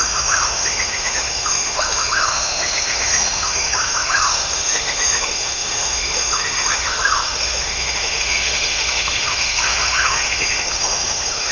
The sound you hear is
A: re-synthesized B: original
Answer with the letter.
A